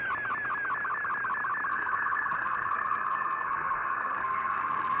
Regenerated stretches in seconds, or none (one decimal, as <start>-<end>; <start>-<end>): 1.7-5.0